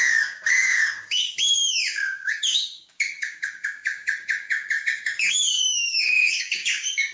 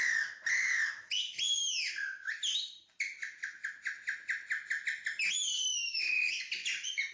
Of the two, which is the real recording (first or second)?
second